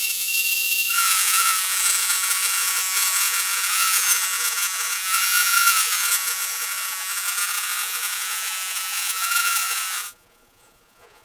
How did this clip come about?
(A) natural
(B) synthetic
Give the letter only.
B